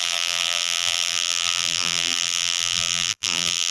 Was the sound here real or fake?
fake